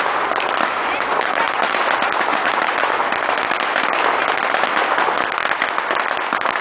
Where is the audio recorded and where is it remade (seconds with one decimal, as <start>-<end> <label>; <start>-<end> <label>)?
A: 0.0-0.8 recorded; 0.8-1.8 remade; 1.8-2.3 recorded; 2.3-3.0 remade; 3.0-6.6 recorded